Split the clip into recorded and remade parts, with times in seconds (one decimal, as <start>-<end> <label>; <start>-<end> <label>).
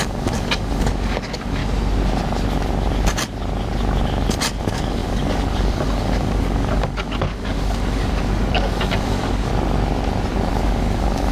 0.0-1.6 remade; 1.6-4.6 recorded; 4.6-9.5 remade; 9.5-10.5 recorded; 10.5-11.3 remade